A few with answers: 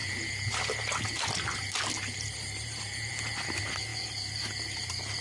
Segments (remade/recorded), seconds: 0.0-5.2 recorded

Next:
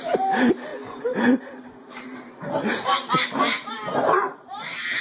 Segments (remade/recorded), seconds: 0.0-0.7 remade; 0.7-1.4 recorded; 1.4-5.0 remade

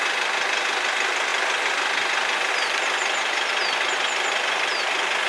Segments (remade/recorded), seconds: 0.0-5.3 recorded

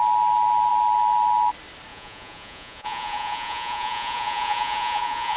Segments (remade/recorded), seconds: 0.0-1.9 recorded; 1.9-5.4 remade

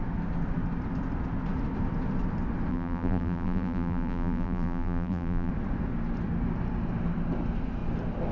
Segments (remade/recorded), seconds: 0.0-2.7 recorded; 2.7-5.5 remade; 5.5-8.3 recorded

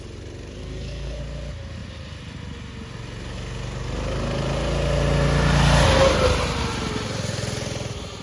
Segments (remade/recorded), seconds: 0.0-0.6 recorded; 0.6-1.2 remade; 1.2-8.2 recorded